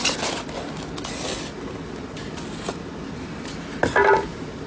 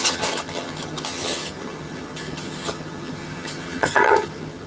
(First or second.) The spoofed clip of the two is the second